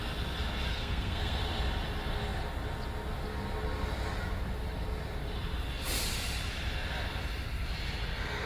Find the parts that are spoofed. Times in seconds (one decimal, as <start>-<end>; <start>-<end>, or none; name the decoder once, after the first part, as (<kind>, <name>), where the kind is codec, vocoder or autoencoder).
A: 0.7-1.4 (codec, SNAC)